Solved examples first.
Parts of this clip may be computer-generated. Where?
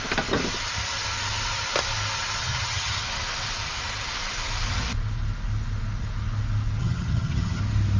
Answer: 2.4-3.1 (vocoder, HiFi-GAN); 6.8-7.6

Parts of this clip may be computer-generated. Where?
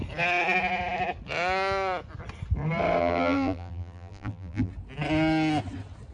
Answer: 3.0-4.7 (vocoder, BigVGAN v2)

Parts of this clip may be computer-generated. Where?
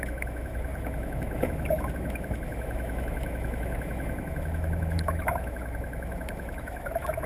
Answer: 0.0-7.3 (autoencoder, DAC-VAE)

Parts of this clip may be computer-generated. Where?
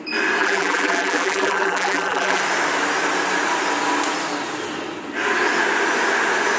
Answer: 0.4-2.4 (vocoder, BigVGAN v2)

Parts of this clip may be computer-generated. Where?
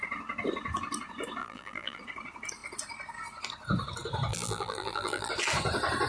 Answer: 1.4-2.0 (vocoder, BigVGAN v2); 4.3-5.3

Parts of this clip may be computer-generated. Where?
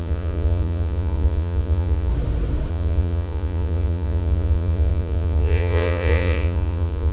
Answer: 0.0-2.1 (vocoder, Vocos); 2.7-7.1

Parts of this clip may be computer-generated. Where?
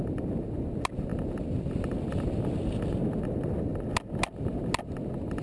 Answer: none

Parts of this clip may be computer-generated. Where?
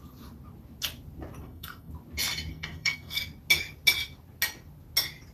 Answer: 1.4-1.9 (codec, SNAC); 2.5-3.2